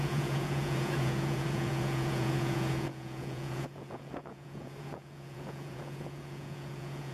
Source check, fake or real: fake